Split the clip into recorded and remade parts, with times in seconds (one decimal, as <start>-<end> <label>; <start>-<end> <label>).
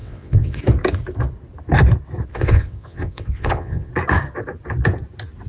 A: 0.0-0.6 remade; 0.6-2.3 recorded; 2.3-3.9 remade; 3.9-5.5 recorded